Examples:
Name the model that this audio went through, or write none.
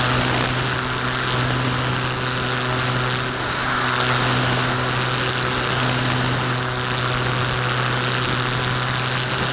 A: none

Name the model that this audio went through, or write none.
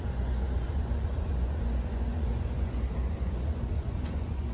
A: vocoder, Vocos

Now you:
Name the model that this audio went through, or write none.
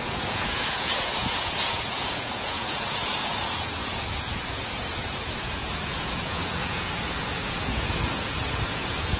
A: vocoder, Vocos